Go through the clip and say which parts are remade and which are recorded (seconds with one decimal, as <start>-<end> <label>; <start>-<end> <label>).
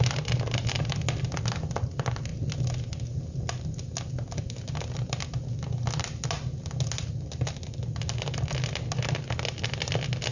0.0-10.3 recorded